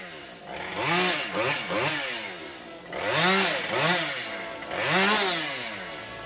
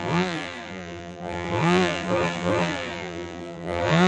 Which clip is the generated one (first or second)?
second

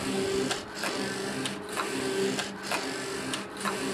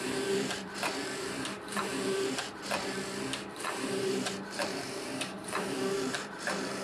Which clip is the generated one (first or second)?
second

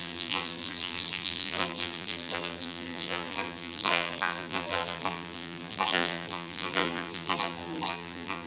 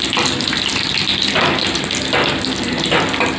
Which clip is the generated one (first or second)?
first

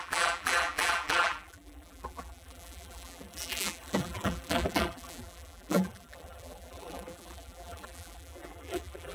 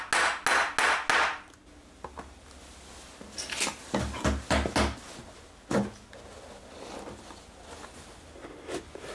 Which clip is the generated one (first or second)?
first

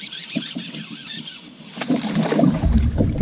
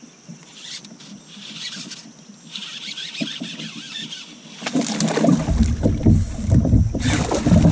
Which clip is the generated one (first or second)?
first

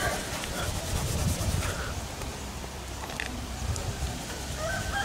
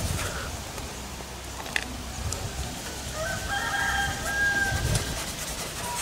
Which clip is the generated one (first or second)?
first